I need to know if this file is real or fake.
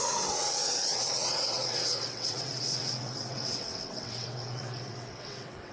fake